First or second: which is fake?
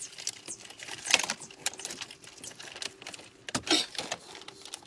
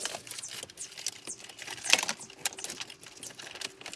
first